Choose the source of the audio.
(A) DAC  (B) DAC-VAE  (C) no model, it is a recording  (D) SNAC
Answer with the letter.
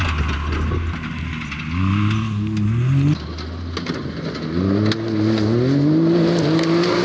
C